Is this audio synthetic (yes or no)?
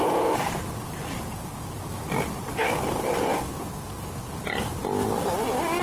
no